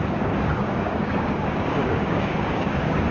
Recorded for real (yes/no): no